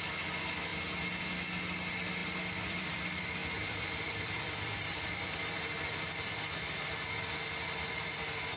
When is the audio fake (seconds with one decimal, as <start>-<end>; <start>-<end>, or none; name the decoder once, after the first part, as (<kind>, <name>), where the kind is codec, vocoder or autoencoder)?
2.2-3.0 (vocoder, BigVGAN v2); 3.4-6.6